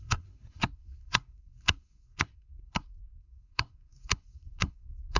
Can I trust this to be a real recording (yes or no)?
no